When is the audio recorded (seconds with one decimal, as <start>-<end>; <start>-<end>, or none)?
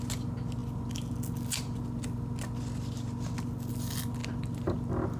0.0-5.2